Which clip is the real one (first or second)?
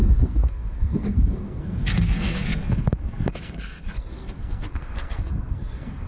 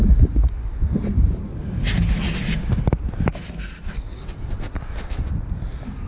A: second